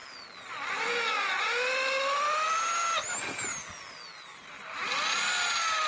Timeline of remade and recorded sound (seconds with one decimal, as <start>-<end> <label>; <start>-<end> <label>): 0.0-5.9 recorded